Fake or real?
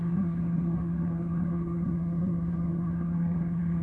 fake